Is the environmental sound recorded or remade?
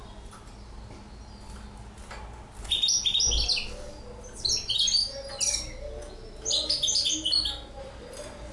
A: recorded